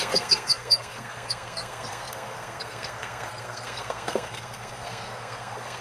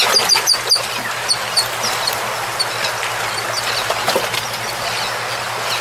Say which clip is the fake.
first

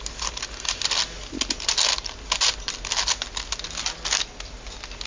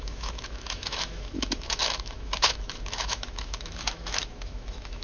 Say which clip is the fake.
second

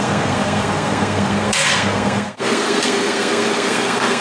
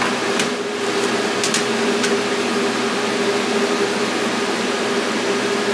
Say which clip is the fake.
first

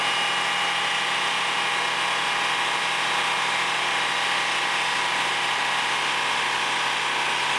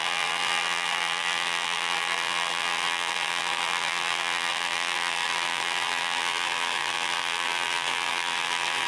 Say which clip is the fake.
second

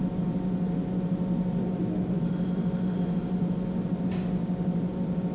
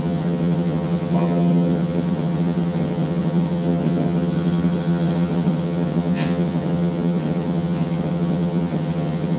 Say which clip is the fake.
second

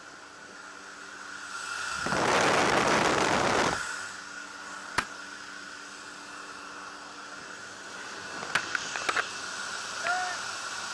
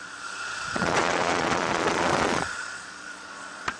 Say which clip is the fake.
second